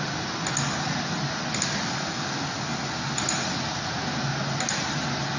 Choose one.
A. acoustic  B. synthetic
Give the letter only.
A